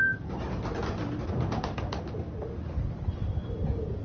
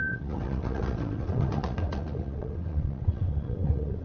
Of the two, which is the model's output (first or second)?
second